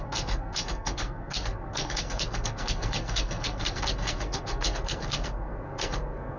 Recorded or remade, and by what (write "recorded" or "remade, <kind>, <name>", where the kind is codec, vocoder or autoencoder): remade, codec, SNAC